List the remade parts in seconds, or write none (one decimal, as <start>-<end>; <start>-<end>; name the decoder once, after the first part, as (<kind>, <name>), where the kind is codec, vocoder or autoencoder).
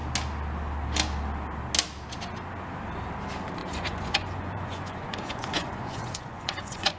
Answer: 3.6-7.0 (vocoder, Vocos)